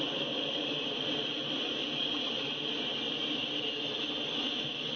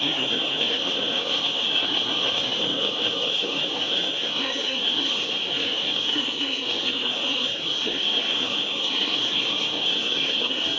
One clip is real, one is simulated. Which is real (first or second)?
first